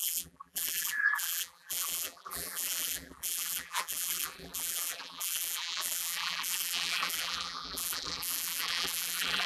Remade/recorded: remade